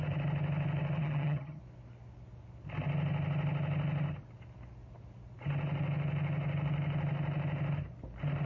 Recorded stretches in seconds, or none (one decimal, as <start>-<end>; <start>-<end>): 0.0-1.0; 1.6-8.5